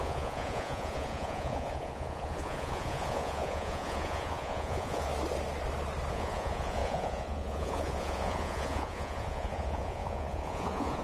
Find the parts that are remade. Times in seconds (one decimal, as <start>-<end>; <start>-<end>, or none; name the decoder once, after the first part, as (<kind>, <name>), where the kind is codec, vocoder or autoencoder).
0.0-5.1 (vocoder, Vocos); 6.1-11.0